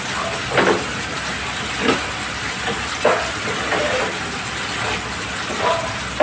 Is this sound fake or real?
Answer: real